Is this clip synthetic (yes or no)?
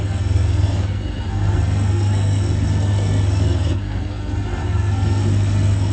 yes